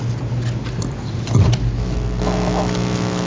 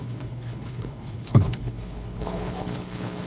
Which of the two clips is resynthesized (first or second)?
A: second